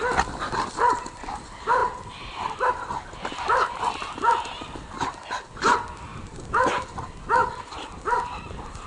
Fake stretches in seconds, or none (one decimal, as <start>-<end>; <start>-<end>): 6.1-6.9